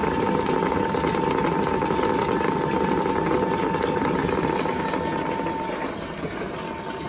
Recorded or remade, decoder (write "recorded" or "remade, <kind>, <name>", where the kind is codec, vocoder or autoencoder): recorded